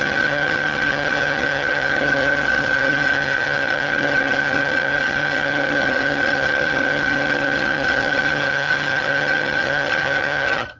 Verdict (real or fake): fake